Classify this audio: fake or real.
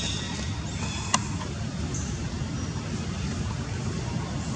real